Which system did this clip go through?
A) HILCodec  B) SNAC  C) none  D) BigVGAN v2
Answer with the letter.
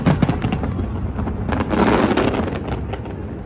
C